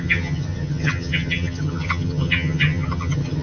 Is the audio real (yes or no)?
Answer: no